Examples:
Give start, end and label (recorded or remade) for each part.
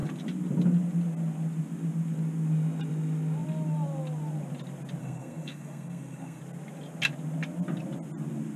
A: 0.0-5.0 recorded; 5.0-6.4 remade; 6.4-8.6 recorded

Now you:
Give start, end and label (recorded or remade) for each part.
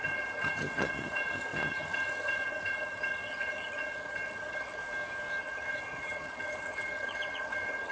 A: 0.0-4.8 remade; 4.8-5.4 recorded; 5.4-7.9 remade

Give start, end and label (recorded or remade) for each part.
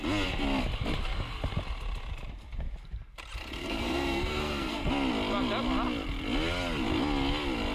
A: 0.0-3.6 recorded; 3.6-4.9 remade; 4.9-7.7 recorded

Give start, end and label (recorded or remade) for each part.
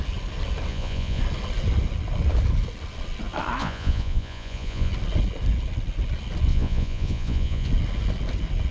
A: 0.0-0.7 recorded; 0.7-1.2 remade; 1.2-3.6 recorded; 3.6-4.9 remade; 4.9-6.5 recorded; 6.5-7.7 remade; 7.7-8.7 recorded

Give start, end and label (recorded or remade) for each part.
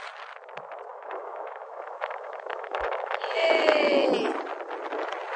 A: 0.0-0.9 recorded; 0.9-4.1 remade; 4.1-5.4 recorded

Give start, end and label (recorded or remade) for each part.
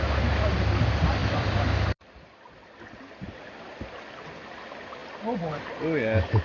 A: 0.0-1.2 recorded; 1.2-2.6 remade; 2.6-6.4 recorded